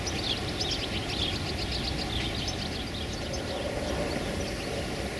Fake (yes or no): no